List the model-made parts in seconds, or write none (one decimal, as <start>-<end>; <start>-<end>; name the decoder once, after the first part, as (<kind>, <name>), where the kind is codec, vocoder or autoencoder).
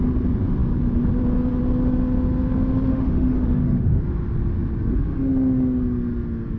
2.9-4.0 (autoencoder, DAC-VAE)